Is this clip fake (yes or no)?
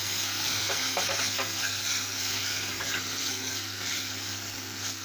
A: yes